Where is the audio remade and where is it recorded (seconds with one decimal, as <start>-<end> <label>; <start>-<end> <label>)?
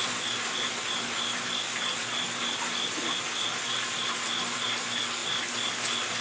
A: 0.0-6.2 recorded